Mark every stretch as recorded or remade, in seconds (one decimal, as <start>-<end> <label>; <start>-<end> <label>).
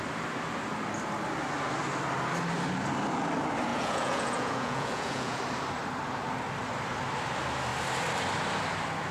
0.0-3.7 recorded; 3.7-5.4 remade; 5.4-9.1 recorded